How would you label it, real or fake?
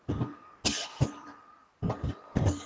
real